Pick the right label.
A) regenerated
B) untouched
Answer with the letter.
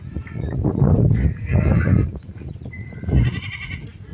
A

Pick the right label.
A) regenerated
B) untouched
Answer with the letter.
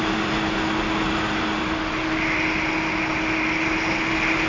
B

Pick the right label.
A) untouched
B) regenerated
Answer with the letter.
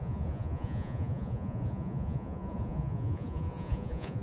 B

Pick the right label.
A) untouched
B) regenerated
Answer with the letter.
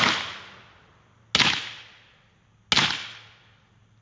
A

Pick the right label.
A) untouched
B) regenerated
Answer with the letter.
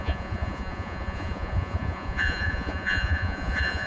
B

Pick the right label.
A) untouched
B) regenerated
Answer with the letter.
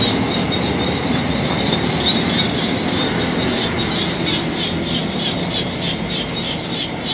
A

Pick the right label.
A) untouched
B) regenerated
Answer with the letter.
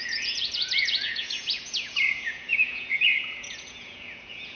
B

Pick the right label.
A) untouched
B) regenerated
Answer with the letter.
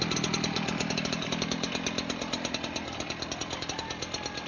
A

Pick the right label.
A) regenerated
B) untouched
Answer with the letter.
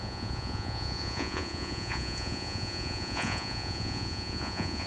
A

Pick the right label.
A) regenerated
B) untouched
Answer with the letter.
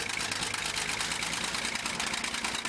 B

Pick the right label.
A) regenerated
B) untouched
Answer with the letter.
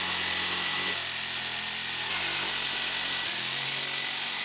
B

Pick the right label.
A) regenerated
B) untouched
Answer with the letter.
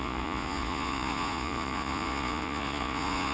A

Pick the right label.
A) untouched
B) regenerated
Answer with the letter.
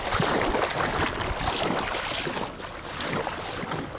A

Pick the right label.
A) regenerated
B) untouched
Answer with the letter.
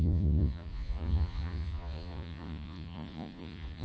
A